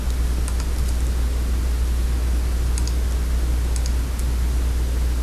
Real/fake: real